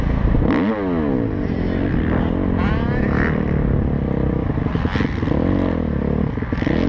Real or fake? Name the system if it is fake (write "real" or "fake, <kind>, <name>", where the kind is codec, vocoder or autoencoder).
real